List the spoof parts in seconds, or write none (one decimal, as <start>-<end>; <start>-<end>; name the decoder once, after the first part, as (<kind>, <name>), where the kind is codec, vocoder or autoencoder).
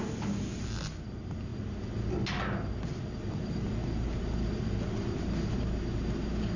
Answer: none